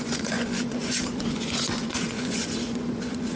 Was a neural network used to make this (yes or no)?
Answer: yes